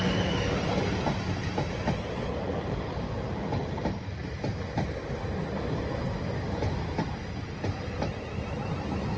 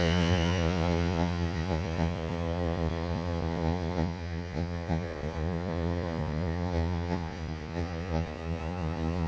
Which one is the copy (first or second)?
second